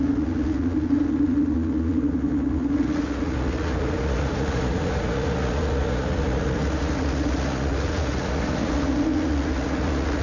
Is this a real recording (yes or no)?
no